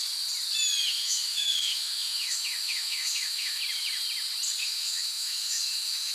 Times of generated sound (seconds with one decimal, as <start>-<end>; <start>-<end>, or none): 0.9-3.6; 4.6-6.1